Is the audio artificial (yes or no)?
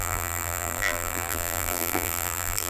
yes